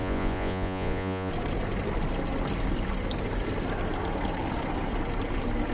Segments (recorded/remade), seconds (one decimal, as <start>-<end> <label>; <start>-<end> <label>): 0.0-1.3 remade; 1.3-5.7 recorded